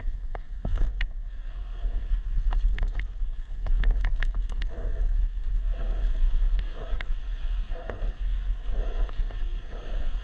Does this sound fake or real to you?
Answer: fake